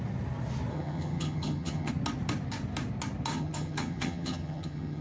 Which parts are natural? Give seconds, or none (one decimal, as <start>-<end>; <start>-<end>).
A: 0.0-0.7; 1.9-3.3